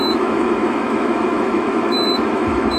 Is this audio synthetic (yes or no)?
yes